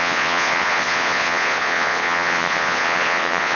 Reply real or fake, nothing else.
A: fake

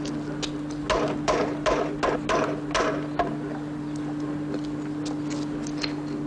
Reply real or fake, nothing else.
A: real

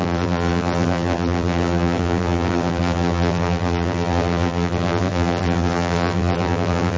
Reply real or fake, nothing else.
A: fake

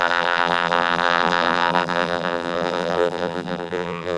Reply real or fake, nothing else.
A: fake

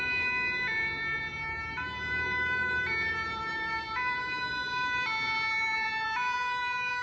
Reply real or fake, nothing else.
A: fake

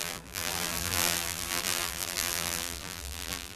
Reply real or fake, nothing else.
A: fake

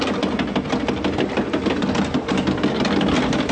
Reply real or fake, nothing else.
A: real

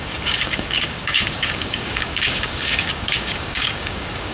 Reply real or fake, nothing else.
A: fake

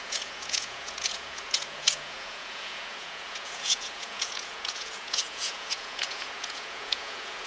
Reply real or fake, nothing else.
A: fake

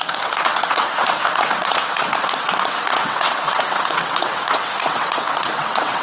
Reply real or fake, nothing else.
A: fake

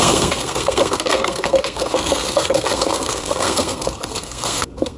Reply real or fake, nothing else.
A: fake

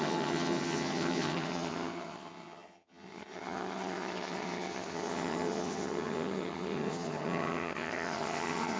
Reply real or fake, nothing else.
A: fake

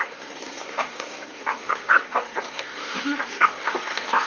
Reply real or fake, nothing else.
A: fake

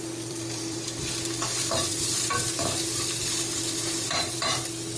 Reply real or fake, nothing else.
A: fake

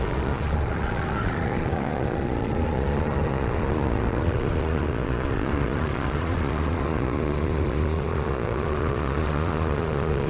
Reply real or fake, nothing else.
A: fake